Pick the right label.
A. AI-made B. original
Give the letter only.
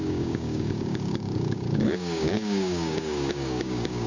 A